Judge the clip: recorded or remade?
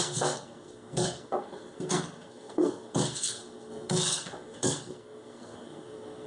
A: remade